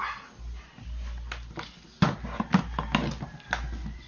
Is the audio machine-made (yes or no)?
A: no